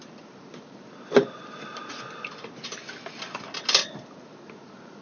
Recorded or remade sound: recorded